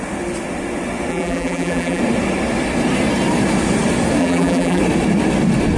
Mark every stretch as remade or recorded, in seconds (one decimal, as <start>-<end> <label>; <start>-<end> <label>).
0.0-1.1 recorded; 1.1-2.0 remade; 2.0-4.2 recorded; 4.2-4.8 remade; 4.8-5.8 recorded